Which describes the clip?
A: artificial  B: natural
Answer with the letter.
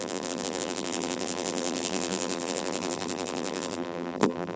A